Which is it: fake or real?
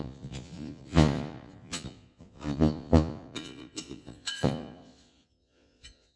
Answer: fake